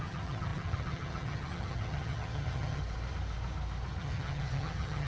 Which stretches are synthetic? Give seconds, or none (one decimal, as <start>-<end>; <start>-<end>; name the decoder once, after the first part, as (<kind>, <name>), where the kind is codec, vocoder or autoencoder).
0.0-2.8 (vocoder, HiFi-GAN); 4.0-5.1